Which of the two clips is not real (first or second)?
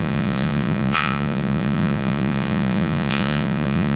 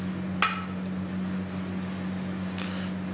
first